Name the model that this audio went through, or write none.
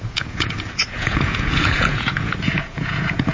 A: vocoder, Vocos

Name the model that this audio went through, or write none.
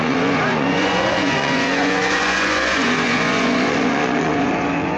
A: vocoder, Vocos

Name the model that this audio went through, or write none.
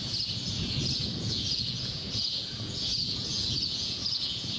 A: vocoder, Vocos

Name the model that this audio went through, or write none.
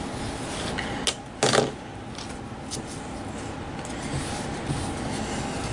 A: none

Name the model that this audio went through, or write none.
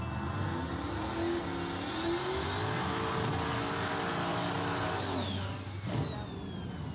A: none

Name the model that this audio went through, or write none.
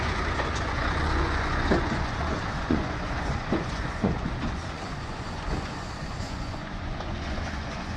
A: vocoder, Vocos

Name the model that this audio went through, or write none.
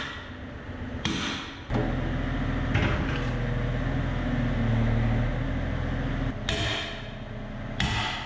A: none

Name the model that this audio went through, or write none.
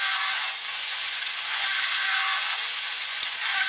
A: vocoder, Vocos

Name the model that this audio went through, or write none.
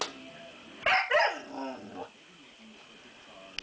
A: none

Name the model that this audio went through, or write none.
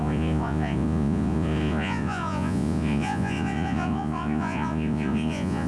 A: vocoder, Vocos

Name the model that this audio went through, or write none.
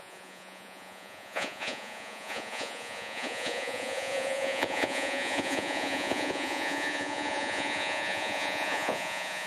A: vocoder, Vocos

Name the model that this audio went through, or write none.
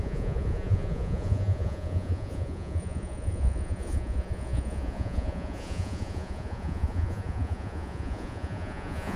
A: vocoder, Vocos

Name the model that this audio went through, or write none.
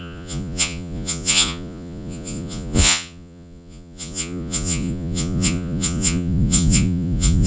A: vocoder, Vocos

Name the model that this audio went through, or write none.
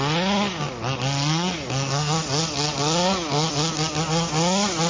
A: none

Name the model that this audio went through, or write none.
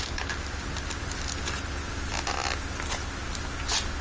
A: none